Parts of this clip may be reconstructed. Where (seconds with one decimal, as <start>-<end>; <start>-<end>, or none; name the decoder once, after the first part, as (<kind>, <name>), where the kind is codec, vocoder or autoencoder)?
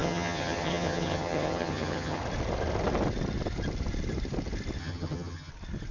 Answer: 0.0-2.2 (vocoder, HiFi-GAN); 4.8-5.5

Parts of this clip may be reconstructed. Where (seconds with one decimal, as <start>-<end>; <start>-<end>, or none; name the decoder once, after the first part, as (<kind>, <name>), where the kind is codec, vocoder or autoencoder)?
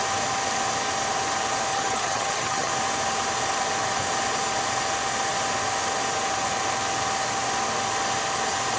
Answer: 1.7-2.7 (vocoder, HiFi-GAN)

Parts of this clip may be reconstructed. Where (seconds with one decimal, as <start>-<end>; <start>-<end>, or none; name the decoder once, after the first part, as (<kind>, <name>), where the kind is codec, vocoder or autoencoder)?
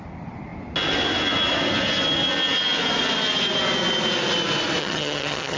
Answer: 4.8-5.6 (vocoder, HiFi-GAN)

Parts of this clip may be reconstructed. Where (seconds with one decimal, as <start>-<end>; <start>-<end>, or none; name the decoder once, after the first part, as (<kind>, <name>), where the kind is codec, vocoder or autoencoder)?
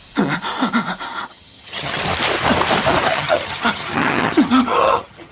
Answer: 1.1-2.0 (vocoder, HiFi-GAN); 3.1-5.3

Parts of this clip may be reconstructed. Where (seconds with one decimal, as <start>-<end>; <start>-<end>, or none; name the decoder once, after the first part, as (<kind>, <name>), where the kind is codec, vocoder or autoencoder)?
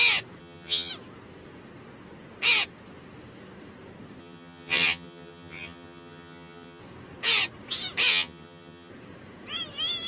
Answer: 0.4-0.9 (vocoder, HiFi-GAN); 4.2-6.8; 8.1-8.9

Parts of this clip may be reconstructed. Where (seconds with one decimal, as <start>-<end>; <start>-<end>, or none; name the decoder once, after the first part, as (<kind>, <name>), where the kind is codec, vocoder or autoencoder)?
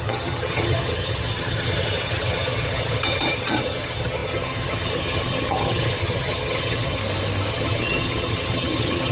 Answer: 0.0-7.0 (vocoder, HiFi-GAN); 7.5-9.1